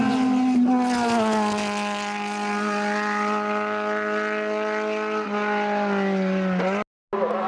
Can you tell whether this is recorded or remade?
recorded